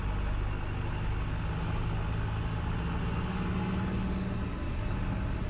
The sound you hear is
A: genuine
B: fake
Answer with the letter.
A